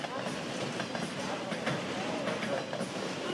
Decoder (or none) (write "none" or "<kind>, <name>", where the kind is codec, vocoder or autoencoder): none